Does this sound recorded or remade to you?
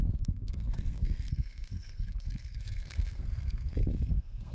remade